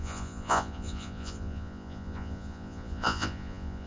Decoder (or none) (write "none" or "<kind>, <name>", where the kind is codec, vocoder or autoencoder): vocoder, Vocos